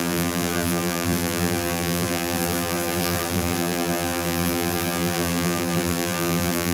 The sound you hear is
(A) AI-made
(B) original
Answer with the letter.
A